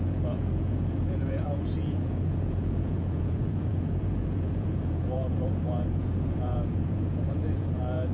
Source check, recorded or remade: remade